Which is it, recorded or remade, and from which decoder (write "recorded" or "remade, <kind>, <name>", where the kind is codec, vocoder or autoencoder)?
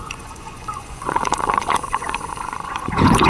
remade, vocoder, Vocos